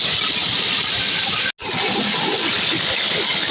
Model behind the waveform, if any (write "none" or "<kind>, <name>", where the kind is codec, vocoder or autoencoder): none